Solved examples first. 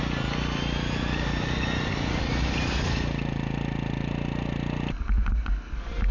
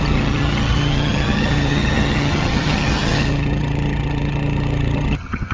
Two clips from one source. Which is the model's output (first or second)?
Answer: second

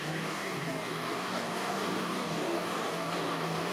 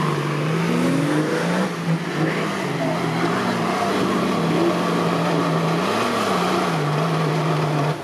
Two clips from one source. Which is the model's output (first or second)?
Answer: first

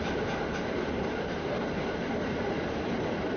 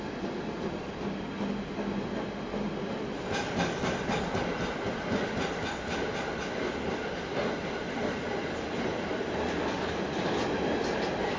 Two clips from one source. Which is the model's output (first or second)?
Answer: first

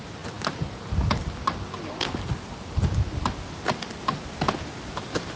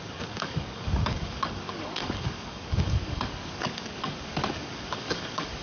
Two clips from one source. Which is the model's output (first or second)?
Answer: second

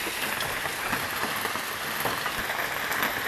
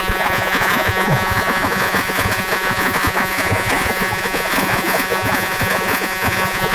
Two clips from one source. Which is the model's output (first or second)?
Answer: second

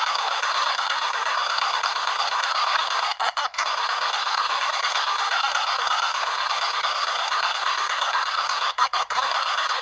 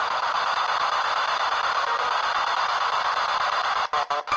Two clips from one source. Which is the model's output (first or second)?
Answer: first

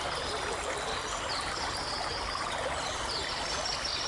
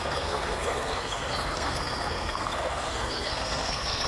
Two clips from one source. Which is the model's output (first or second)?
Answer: second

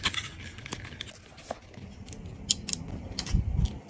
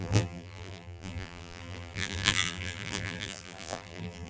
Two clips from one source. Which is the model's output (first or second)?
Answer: second